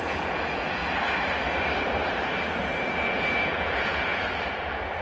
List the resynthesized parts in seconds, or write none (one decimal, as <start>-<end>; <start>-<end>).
0.0-0.8; 2.9-5.0